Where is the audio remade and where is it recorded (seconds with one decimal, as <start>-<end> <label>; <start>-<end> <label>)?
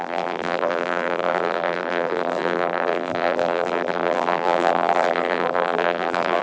0.0-6.4 remade